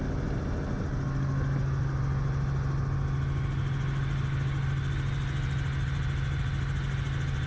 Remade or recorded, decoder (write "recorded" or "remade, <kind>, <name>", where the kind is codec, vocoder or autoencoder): recorded